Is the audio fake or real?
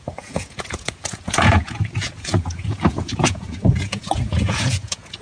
fake